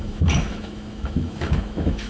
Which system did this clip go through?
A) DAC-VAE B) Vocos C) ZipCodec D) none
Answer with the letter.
A